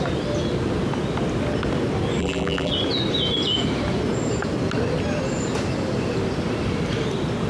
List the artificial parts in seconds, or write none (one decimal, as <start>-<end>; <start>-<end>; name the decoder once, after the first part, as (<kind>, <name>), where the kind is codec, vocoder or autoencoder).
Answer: 2.2-2.7 (vocoder, BigVGAN v2)